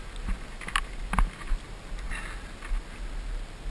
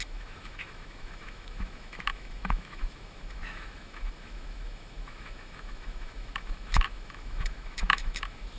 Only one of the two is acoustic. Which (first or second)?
first